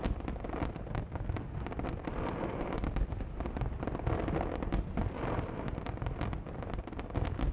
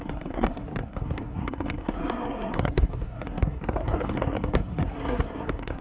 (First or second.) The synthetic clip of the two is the second